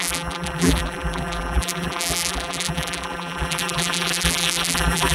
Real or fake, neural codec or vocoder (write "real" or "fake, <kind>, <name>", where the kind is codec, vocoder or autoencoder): fake, vocoder, BigVGAN v2